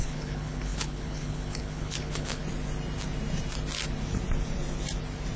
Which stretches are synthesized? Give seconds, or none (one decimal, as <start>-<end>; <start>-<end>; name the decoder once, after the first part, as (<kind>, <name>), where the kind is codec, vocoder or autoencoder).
0.0-2.4 (codec, HILCodec)